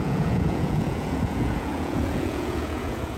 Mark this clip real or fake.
fake